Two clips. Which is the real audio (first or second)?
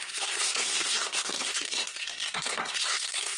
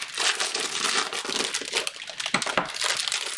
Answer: second